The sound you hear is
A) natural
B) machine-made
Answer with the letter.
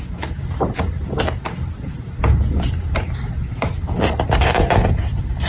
A